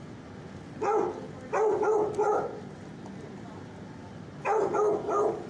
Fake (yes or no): no